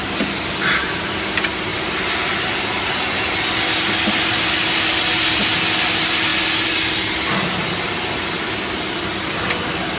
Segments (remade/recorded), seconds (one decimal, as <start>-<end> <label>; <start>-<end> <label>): 0.0-10.0 recorded